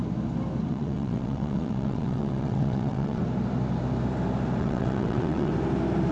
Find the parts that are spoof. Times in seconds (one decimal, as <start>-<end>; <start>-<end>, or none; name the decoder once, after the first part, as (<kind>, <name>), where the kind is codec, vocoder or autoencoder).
0.7-3.2 (vocoder, WaveNeXt); 4.6-5.5